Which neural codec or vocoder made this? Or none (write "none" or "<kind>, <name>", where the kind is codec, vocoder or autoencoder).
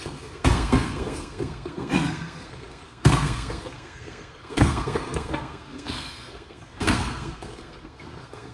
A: codec, SNAC